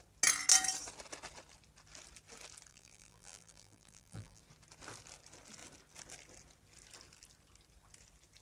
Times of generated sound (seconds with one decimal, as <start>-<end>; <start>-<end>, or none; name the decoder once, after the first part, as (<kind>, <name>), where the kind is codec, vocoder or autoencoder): 2.7-4.4 (vocoder, BigVGAN v2)